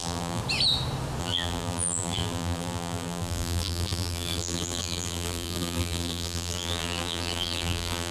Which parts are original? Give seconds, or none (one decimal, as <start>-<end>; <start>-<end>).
0.4-1.2